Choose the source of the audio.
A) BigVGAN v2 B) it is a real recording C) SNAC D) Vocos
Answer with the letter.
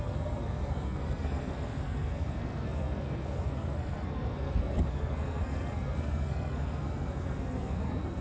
C